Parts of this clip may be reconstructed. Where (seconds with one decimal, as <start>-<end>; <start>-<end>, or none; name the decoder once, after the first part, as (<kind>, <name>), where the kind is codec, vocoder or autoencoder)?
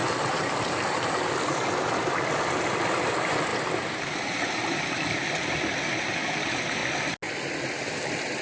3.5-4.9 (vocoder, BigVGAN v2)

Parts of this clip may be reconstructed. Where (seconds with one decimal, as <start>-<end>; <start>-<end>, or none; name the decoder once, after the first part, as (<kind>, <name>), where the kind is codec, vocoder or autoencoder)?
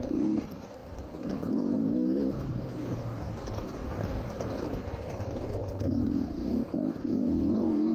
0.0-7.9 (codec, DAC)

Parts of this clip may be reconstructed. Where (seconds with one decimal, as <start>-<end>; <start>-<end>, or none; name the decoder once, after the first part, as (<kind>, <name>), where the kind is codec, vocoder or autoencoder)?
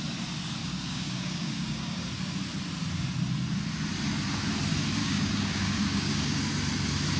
0.6-2.1 (codec, DAC); 5.0-6.4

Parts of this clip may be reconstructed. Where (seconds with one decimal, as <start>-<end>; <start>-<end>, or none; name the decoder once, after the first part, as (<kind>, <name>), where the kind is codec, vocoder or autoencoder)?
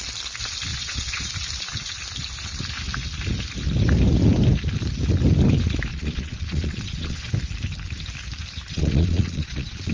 0.7-1.3 (vocoder, Vocos); 5.9-7.3; 8.7-9.9